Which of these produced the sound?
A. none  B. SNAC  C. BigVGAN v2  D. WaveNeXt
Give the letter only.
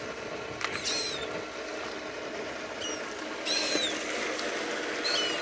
A